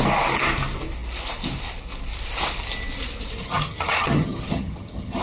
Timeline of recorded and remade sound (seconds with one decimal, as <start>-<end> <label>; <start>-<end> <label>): 0.0-3.4 recorded; 3.4-5.2 remade